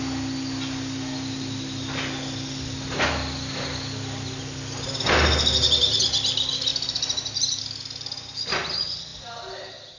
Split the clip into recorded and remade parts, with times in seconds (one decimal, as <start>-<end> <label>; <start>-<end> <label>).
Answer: 0.0-6.7 recorded; 6.7-7.6 remade; 7.6-10.0 recorded